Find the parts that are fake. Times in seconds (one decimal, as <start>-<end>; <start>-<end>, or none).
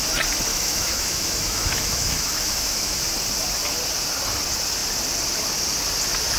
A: 0.5-3.0